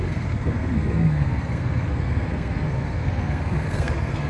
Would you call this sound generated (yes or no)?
yes